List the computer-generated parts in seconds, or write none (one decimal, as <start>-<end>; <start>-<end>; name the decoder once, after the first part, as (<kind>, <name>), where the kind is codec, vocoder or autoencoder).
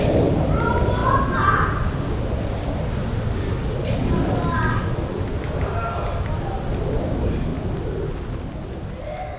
none